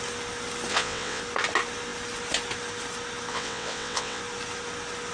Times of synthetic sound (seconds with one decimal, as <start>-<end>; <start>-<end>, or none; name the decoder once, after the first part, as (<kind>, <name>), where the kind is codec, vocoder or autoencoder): 0.7-1.2 (vocoder, WaveNeXt); 3.3-4.2